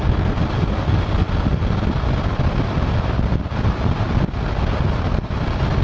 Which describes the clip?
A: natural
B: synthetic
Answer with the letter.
A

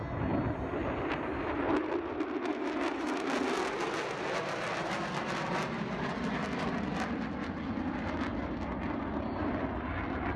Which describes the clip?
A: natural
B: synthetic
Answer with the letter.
A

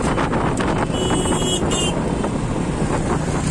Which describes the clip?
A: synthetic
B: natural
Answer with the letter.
B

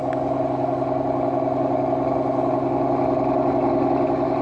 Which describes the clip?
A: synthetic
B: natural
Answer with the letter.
B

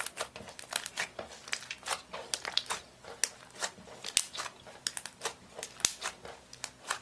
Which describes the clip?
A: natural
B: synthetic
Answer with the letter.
A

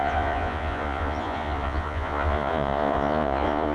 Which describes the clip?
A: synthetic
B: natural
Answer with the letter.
A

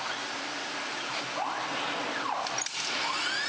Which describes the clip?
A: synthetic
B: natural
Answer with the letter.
B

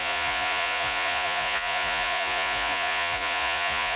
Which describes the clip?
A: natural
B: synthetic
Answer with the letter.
B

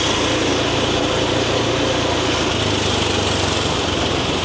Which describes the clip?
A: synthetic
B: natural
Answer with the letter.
B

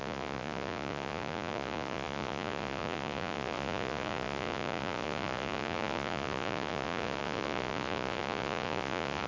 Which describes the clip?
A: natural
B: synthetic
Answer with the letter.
B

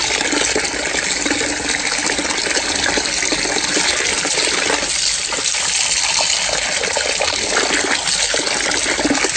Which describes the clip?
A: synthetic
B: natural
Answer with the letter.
B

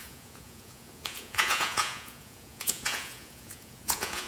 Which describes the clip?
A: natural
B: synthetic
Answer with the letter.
B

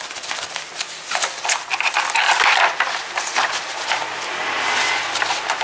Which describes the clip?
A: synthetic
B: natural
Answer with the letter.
B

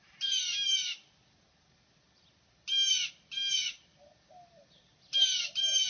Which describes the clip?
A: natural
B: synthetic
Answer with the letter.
A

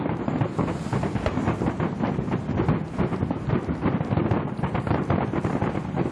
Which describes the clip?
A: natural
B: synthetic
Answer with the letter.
A